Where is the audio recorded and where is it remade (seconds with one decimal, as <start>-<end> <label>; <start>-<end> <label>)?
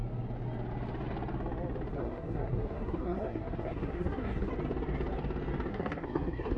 0.0-2.0 recorded; 2.0-4.5 remade; 4.5-5.7 recorded; 5.7-6.6 remade